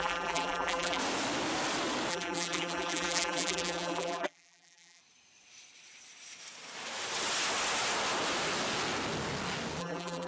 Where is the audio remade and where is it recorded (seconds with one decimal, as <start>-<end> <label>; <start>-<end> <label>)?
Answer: 0.0-1.0 remade; 1.0-2.1 recorded; 2.1-5.0 remade; 5.0-9.8 recorded; 9.8-10.3 remade